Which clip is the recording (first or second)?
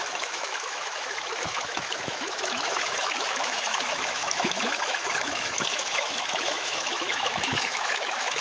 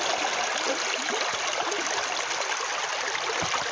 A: second